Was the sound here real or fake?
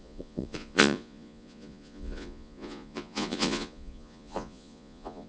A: fake